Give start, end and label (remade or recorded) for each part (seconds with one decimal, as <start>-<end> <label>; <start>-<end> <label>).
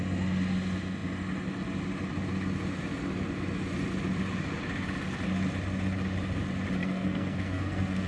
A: 0.0-6.8 recorded; 6.8-8.1 remade